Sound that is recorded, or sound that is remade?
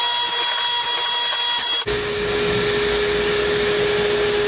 recorded